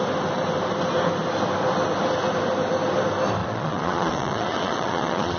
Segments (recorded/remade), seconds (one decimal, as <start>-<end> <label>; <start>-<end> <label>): 0.0-3.4 recorded; 3.4-5.4 remade